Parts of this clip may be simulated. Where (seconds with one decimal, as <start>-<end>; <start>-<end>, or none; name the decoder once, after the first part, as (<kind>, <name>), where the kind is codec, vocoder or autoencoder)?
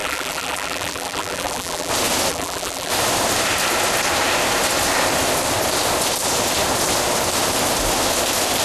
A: 0.0-1.9 (vocoder, BigVGAN v2); 2.3-2.9